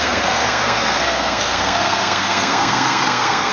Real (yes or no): no